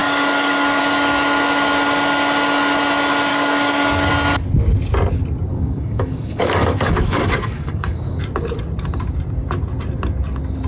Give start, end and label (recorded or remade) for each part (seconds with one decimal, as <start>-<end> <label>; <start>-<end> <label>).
0.0-0.8 remade; 0.8-3.3 recorded; 3.3-4.1 remade; 4.1-5.5 recorded; 5.5-8.2 remade; 8.2-10.7 recorded